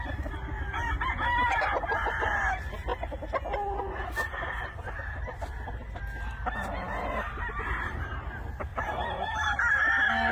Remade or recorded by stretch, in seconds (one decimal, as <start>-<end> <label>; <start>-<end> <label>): 0.0-8.7 recorded; 8.7-9.8 remade; 9.8-10.3 recorded